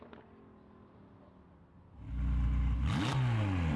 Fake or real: real